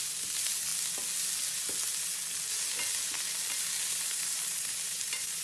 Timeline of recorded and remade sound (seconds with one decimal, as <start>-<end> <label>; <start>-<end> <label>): 0.0-0.7 remade; 0.7-3.9 recorded; 3.9-5.4 remade